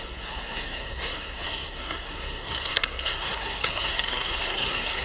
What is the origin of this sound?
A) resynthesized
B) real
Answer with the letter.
A